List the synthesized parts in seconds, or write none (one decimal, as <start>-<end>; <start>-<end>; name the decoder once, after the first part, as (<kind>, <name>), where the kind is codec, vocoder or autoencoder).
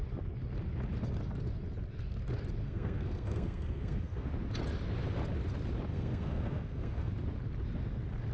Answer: 2.6-4.3 (codec, SNAC); 5.9-7.1